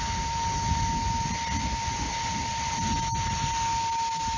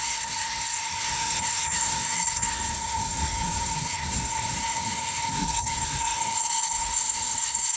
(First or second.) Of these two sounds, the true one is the first